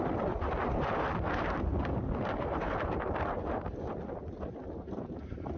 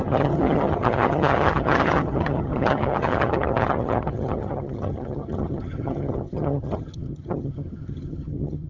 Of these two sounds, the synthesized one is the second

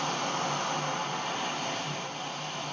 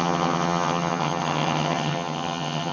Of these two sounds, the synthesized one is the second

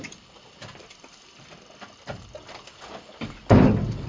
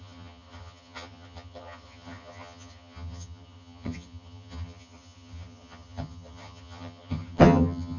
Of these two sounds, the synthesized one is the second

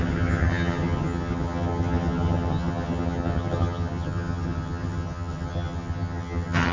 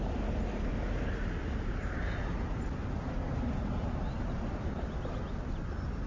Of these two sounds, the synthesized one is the first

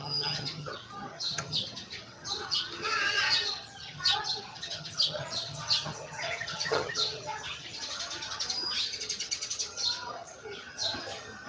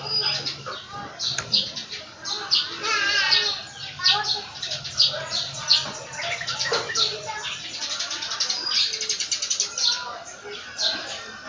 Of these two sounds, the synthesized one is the first